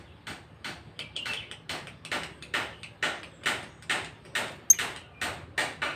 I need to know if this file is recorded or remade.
recorded